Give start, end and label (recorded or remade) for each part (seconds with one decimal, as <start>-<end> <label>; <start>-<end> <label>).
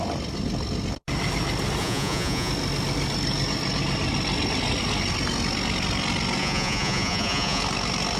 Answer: 0.0-1.8 recorded; 1.8-2.5 remade; 2.5-6.4 recorded; 6.4-7.6 remade; 7.6-8.2 recorded